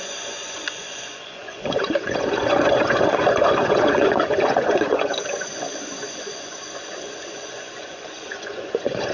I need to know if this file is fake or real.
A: fake